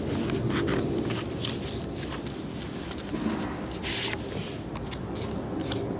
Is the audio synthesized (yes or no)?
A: no